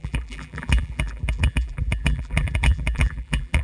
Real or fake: fake